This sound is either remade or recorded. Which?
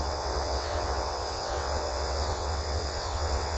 remade